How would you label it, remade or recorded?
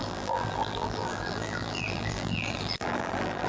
remade